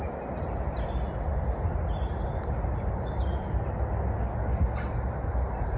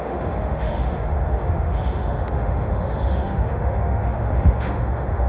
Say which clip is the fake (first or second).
second